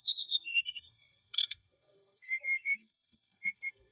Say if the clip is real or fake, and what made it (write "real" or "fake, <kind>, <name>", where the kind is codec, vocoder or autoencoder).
fake, codec, SNAC